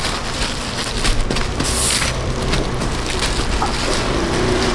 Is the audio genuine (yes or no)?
yes